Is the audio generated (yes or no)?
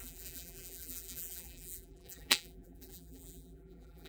yes